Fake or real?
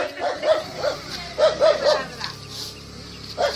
real